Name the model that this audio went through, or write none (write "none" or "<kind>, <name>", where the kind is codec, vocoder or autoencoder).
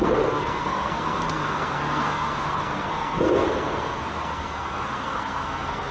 codec, SNAC